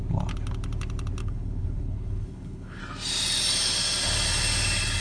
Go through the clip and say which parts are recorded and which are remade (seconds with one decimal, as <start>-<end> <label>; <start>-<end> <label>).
0.0-1.2 recorded; 1.2-2.8 remade; 2.8-5.0 recorded